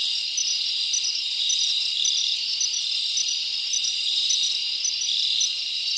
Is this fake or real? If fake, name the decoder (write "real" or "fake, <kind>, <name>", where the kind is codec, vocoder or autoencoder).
real